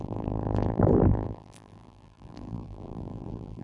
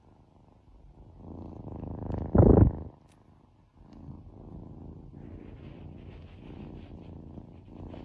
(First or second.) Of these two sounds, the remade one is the first